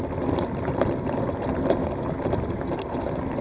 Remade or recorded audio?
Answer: recorded